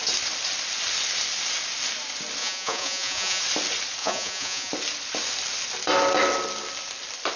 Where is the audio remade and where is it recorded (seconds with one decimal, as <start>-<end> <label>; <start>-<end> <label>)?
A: 0.0-2.4 recorded; 2.4-3.4 remade; 3.4-4.0 recorded; 4.0-4.7 remade; 4.7-7.4 recorded